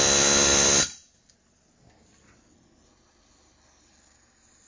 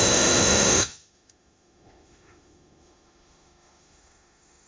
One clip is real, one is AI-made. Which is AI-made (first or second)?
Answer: second